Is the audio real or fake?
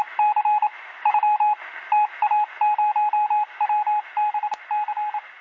real